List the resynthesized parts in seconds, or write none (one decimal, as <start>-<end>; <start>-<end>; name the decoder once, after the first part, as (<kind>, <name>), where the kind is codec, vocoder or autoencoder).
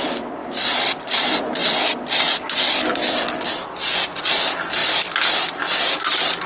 none